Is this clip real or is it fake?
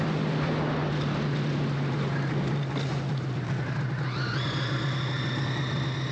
real